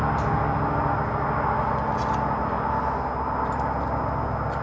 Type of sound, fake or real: real